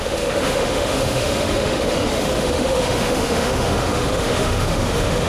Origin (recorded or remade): remade